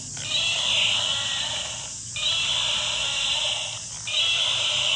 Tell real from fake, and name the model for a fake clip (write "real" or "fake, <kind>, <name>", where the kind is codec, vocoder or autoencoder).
real